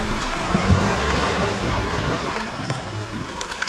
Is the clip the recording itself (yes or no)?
no